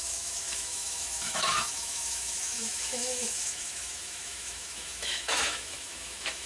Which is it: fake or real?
fake